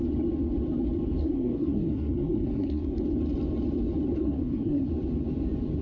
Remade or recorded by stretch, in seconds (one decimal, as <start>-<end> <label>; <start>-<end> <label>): 0.0-1.2 recorded; 1.2-3.0 remade; 3.0-4.2 recorded; 4.2-4.9 remade; 4.9-5.8 recorded